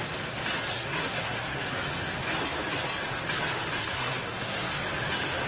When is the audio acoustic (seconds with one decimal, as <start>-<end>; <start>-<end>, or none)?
0.0-0.7; 1.8-3.8; 4.7-5.5